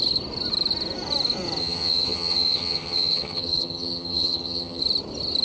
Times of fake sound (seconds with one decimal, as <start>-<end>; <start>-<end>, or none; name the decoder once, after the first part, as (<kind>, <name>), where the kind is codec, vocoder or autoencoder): 1.6-4.8 (vocoder, HiFi-GAN)